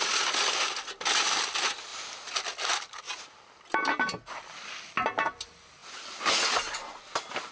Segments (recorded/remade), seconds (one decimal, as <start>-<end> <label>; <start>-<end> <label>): 0.0-7.5 recorded